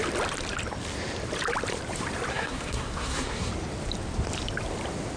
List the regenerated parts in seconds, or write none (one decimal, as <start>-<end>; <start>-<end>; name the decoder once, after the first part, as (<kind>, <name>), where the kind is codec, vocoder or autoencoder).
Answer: 2.3-3.5 (codec, SNAC)